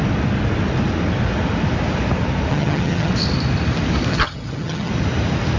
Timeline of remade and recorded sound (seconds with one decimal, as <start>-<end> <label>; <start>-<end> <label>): 0.0-2.5 recorded; 2.5-3.1 remade; 3.1-4.1 recorded; 4.1-4.9 remade; 4.9-5.6 recorded